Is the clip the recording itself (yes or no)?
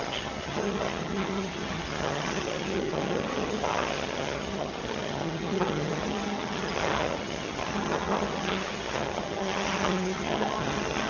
no